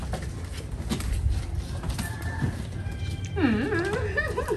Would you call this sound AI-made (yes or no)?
no